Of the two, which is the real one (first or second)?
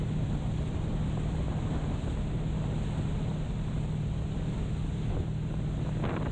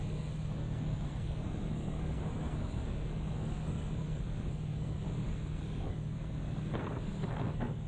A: first